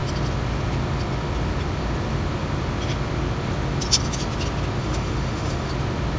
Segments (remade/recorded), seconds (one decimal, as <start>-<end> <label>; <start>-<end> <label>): 0.0-4.8 recorded; 4.8-5.7 remade; 5.7-6.2 recorded